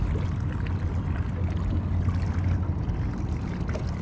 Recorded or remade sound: recorded